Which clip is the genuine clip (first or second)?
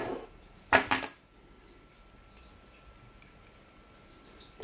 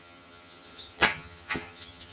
first